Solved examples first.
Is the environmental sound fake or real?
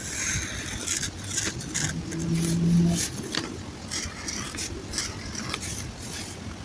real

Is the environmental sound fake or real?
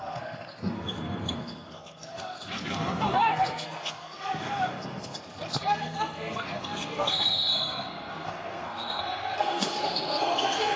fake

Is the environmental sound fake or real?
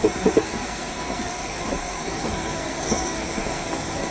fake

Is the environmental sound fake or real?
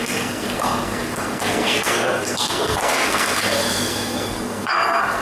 fake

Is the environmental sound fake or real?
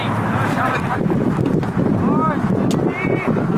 real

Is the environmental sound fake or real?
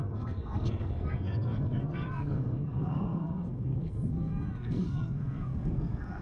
fake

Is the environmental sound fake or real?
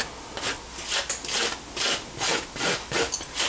real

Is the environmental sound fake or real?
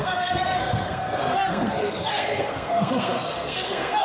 fake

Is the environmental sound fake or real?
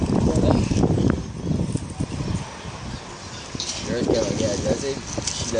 real